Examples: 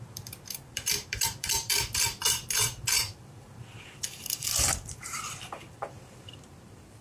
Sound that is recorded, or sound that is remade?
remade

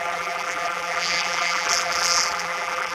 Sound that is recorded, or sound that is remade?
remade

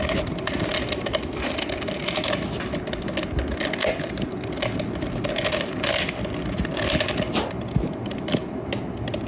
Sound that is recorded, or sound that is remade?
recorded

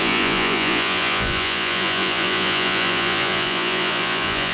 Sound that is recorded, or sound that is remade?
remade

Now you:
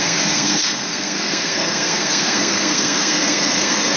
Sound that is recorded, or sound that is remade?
remade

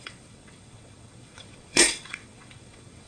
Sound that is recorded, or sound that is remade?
remade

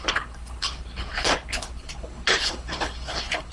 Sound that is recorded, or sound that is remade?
remade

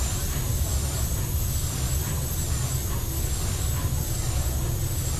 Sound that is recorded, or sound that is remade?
recorded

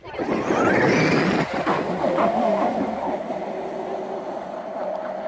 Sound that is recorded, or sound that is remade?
recorded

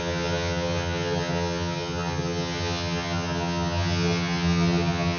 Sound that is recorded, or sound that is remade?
remade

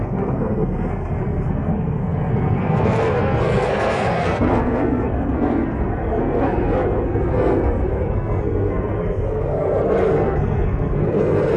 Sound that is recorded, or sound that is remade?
remade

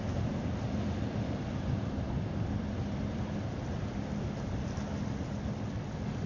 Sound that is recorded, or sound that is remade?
recorded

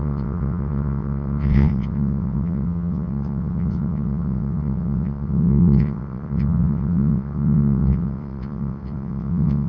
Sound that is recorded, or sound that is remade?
remade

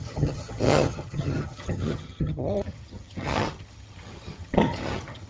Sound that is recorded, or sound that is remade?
remade